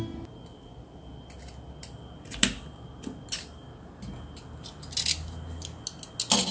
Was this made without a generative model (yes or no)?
yes